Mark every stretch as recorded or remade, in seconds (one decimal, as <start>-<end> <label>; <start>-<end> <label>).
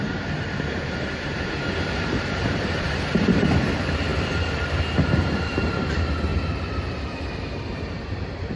0.0-6.3 remade; 6.3-6.9 recorded; 6.9-8.6 remade